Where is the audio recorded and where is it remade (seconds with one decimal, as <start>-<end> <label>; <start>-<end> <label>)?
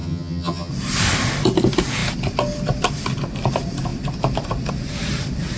0.0-0.7 remade; 0.7-5.6 recorded